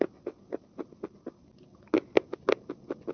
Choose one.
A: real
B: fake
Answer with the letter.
A